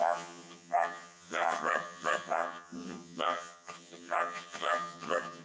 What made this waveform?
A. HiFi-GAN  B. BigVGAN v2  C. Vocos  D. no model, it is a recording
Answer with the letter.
A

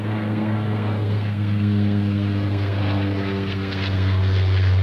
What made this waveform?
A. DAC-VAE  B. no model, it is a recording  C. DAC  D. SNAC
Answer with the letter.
D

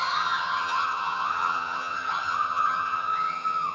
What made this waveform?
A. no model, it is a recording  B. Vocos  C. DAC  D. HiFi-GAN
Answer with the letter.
D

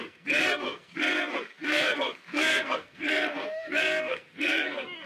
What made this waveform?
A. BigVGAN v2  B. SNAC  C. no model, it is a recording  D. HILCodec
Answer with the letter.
B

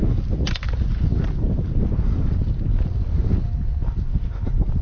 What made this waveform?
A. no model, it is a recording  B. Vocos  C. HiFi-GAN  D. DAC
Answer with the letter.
A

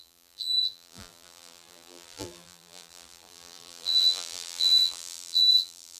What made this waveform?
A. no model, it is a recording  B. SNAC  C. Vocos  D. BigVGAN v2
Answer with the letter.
D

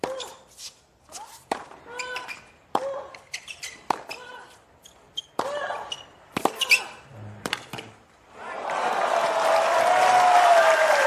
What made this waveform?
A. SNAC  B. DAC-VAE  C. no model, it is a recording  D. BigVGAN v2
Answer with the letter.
D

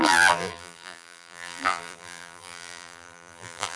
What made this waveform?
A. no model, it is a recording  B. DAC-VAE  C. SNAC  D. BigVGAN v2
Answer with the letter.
D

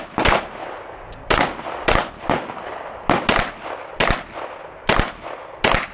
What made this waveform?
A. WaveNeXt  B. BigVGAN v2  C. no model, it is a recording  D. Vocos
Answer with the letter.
C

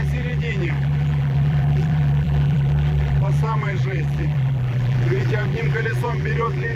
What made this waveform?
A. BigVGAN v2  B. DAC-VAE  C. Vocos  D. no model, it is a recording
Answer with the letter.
A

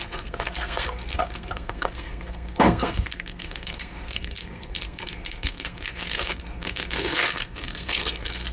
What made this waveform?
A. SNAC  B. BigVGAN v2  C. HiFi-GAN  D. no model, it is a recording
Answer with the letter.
A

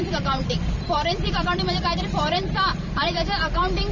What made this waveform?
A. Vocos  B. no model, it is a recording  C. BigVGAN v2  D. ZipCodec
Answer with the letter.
C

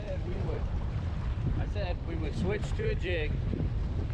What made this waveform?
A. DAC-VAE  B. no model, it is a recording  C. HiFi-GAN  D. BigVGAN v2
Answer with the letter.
D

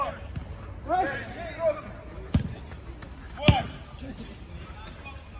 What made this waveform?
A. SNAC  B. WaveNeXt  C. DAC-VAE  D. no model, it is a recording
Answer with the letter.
D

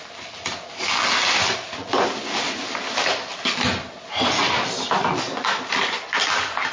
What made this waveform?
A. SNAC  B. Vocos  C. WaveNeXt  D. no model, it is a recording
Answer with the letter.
D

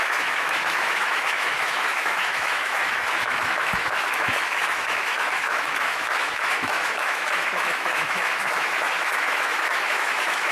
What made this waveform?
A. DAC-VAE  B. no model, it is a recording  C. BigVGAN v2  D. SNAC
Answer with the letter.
A